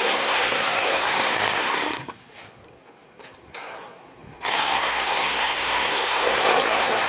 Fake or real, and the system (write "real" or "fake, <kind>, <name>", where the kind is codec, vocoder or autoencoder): fake, codec, SNAC